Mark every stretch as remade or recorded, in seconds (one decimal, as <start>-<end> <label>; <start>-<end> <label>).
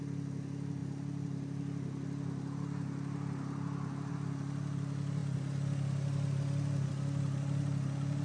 0.0-8.2 recorded